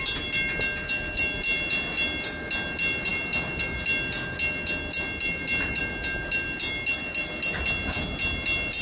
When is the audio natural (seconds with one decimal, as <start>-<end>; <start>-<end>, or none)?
0.0-8.8